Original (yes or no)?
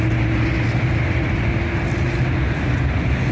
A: yes